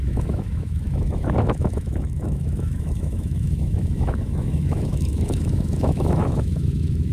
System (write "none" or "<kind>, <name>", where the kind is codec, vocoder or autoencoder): autoencoder, DAC-VAE